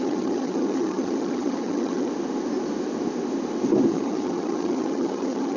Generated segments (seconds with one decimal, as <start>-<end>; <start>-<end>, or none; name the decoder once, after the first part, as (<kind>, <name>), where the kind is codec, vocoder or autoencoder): 0.0-2.1 (vocoder, HiFi-GAN); 3.9-5.6